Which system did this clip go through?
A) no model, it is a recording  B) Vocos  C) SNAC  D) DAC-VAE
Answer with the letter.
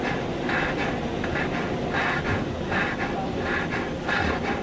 A